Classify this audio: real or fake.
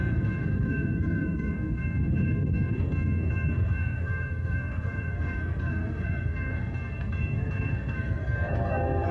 fake